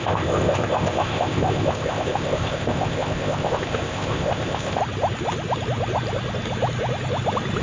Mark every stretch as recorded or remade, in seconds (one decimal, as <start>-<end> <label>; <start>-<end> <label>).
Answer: 0.0-4.8 remade; 4.8-7.6 recorded